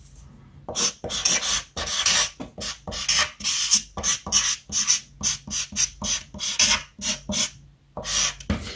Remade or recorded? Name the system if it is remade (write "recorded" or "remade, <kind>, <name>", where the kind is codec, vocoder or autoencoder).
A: recorded